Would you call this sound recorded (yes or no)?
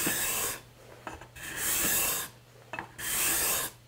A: yes